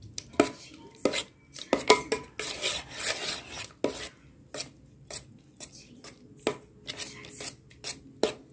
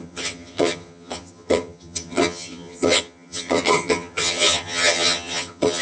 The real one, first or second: first